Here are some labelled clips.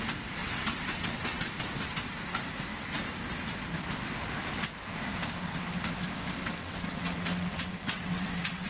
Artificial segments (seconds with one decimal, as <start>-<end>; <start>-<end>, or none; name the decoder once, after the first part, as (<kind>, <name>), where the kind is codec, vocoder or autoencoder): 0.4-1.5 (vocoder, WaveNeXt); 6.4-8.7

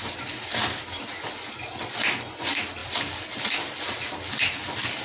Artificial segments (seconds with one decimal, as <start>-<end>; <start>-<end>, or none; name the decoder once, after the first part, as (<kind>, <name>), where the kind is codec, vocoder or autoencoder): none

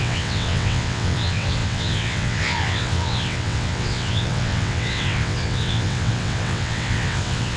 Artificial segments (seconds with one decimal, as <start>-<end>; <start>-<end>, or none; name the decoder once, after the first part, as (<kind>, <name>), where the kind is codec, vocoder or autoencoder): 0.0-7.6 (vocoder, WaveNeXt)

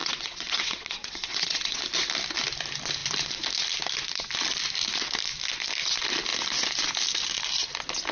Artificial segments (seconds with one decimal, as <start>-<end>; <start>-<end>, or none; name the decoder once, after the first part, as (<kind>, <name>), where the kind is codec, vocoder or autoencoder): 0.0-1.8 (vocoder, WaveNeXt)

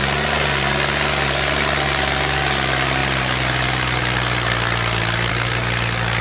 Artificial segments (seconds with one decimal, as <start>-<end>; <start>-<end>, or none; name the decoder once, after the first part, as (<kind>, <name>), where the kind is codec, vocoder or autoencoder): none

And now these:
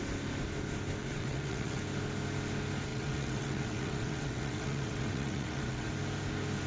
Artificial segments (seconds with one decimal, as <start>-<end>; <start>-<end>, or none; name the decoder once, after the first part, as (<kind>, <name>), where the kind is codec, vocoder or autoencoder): 1.0-1.8 (vocoder, WaveNeXt); 2.9-5.9

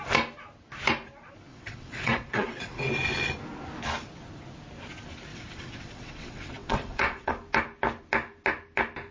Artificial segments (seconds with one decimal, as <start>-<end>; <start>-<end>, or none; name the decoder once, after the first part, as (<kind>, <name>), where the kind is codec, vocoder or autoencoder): 1.5-2.8 (vocoder, WaveNeXt); 5.3-7.3